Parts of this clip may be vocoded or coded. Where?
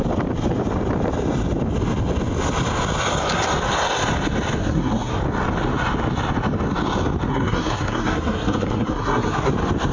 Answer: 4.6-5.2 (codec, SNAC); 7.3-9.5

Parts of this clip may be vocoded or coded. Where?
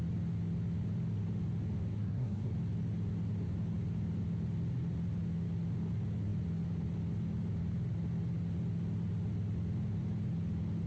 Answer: 1.9-2.5 (codec, SNAC)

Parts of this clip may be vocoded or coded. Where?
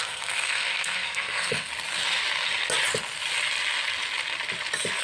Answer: 0.0-1.7 (codec, SNAC)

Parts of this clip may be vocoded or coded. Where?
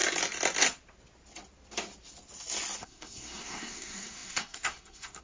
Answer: 2.8-5.2 (codec, SNAC)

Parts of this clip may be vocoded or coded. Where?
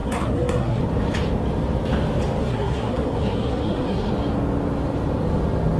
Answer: 0.0-0.8 (codec, SNAC); 2.4-4.1